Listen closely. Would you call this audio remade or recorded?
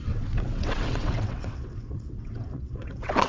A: remade